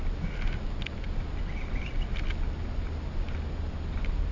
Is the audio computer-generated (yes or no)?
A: no